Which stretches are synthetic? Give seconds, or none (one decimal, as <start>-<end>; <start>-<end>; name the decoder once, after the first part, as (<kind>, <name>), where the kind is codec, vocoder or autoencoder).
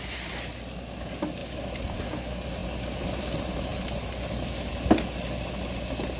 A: none